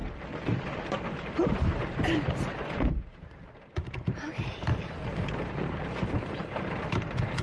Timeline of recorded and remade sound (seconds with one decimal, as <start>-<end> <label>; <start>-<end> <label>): 0.0-1.3 recorded; 1.3-7.4 remade